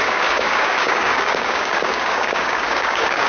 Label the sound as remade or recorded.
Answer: remade